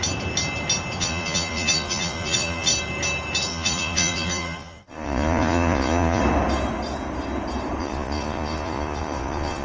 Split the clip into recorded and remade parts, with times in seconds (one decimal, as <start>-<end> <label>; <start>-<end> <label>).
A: 0.0-1.0 recorded; 1.0-2.7 remade; 2.7-3.5 recorded; 3.5-6.2 remade; 6.2-7.8 recorded; 7.8-9.6 remade